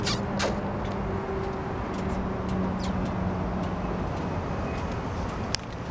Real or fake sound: real